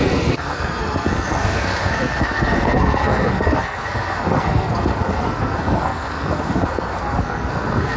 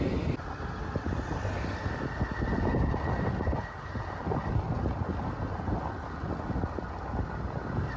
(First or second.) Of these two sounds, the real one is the second